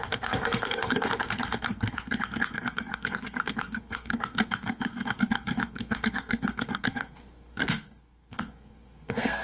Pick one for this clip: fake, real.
fake